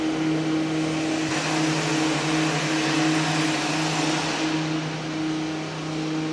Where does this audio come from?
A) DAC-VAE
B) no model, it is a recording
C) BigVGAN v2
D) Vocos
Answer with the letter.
B